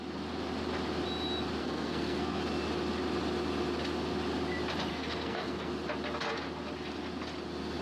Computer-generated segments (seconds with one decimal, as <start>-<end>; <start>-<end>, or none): 1.6-2.4; 4.9-5.7

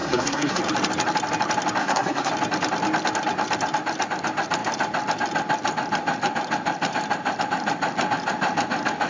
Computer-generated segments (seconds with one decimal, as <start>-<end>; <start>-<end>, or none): 0.0-0.6; 1.8-2.3

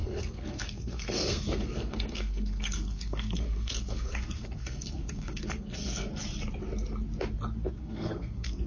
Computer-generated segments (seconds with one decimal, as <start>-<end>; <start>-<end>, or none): 0.0-6.1; 7.7-8.7

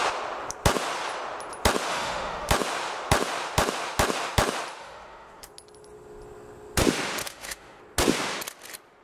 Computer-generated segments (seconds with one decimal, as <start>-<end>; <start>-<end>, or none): 1.9-2.5; 4.8-5.5; 7.2-7.8

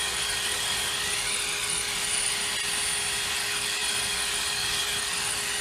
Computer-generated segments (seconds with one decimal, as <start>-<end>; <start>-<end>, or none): 0.0-2.4; 3.3-5.6